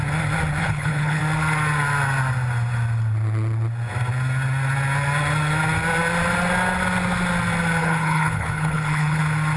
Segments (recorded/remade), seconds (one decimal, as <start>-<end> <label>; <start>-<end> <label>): 0.0-0.6 recorded; 0.6-1.2 remade; 1.2-7.8 recorded; 7.8-9.2 remade; 9.2-9.6 recorded